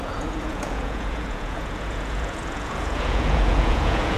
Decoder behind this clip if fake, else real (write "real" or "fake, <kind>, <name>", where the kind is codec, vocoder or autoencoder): fake, vocoder, Vocos